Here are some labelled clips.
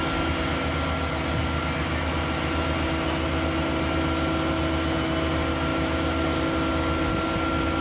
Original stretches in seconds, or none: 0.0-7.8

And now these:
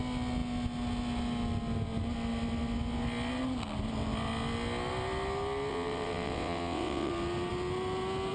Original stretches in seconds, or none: 0.0-5.7; 7.1-8.3

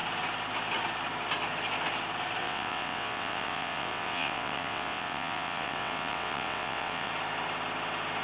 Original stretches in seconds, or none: 0.0-2.4; 7.1-8.2

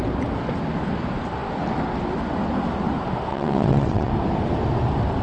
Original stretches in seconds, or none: 0.0-3.3; 4.1-5.2

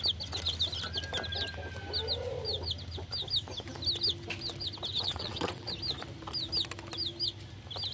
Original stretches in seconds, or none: 0.0-4.9; 5.7-7.9

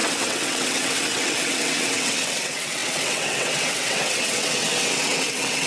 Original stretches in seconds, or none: none